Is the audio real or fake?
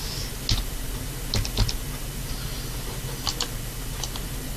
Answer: real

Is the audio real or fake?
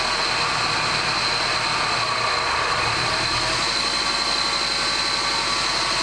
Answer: real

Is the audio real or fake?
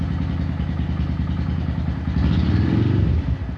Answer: real